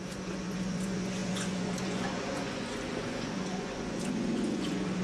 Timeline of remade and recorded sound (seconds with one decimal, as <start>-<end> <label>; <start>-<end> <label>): 0.0-5.0 remade